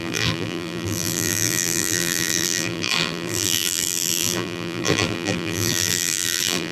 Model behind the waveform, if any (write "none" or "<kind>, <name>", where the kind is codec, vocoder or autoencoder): vocoder, BigVGAN v2